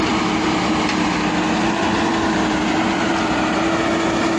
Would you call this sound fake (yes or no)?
no